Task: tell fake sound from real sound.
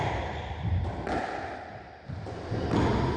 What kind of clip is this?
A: real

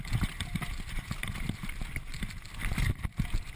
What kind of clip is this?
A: real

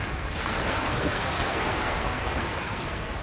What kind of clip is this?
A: fake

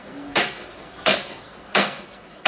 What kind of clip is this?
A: fake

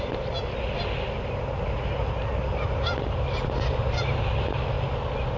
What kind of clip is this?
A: real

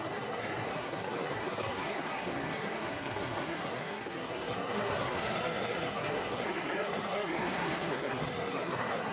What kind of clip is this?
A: fake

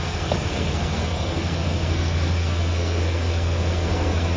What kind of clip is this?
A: fake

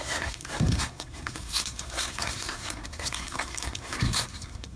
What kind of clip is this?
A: fake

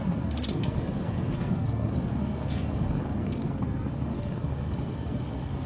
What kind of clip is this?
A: fake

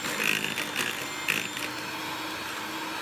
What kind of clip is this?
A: real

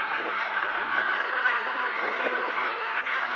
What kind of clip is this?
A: fake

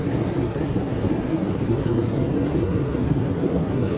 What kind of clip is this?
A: fake